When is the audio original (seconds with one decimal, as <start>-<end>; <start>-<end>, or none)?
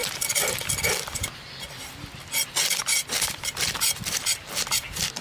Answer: 0.0-1.7